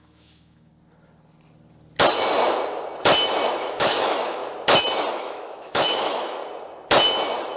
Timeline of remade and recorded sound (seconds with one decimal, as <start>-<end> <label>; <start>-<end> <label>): 0.0-0.7 remade; 0.7-3.6 recorded; 3.6-4.4 remade; 4.4-5.1 recorded; 5.1-6.4 remade; 6.4-7.6 recorded